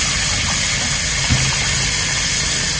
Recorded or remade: recorded